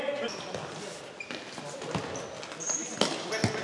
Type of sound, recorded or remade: recorded